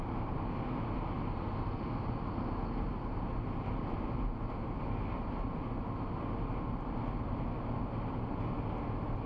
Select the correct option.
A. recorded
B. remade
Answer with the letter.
A